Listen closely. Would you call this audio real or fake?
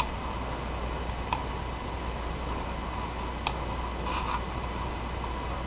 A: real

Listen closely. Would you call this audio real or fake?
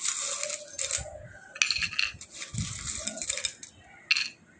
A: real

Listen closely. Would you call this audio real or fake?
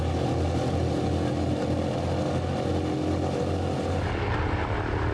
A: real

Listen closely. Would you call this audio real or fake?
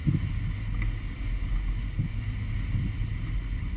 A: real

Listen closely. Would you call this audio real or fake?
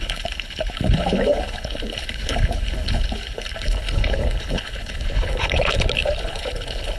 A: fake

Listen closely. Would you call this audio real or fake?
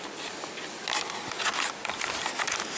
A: real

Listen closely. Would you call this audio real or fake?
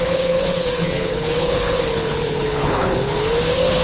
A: fake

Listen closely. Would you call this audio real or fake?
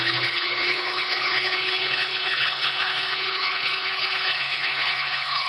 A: fake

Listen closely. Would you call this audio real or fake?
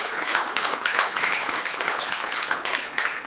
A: fake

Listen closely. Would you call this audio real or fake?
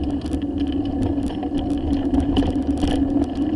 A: real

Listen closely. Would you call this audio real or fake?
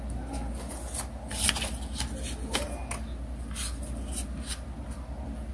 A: real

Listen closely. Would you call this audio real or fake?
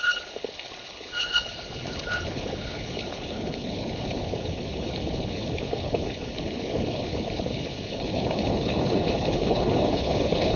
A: fake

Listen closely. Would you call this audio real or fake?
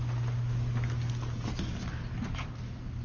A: real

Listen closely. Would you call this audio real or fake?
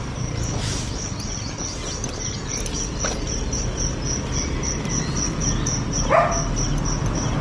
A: real